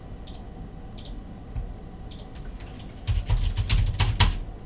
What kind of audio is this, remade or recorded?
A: recorded